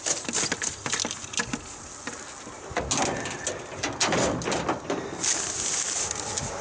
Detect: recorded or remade recorded